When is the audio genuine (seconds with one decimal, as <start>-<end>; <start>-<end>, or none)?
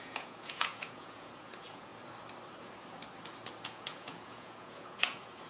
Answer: 1.9-3.6